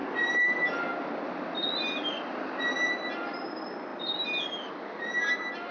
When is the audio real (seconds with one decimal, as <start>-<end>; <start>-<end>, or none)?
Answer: 0.0-5.7